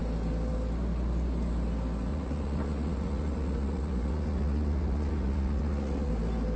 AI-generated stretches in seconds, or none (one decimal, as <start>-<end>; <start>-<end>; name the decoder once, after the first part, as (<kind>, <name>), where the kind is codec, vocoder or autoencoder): 2.1-6.1 (vocoder, Vocos)